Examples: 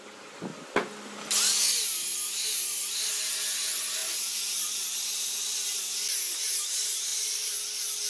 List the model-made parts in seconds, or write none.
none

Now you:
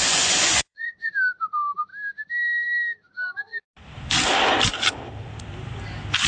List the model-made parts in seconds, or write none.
0.0-1.1 (vocoder, Vocos)

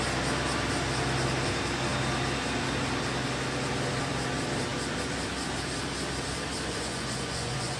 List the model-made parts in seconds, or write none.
6.7-7.8 (vocoder, Vocos)

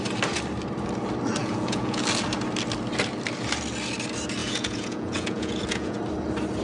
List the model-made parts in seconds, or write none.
1.4-2.0 (vocoder, Vocos); 4.4-6.0